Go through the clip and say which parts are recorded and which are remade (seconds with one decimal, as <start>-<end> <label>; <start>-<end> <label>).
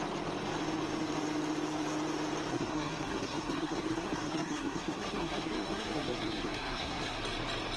0.0-2.5 recorded; 2.5-7.2 remade; 7.2-7.8 recorded